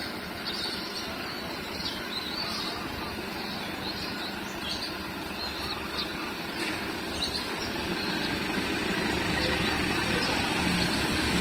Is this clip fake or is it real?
real